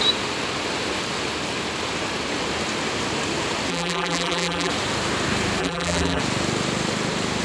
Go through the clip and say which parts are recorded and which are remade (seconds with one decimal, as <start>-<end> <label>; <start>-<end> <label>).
0.0-3.7 recorded; 3.7-4.7 remade; 4.7-5.6 recorded; 5.6-6.2 remade; 6.2-7.4 recorded